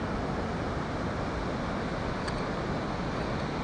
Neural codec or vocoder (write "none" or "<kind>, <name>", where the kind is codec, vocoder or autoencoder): none